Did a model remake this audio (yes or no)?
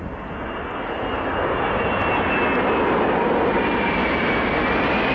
no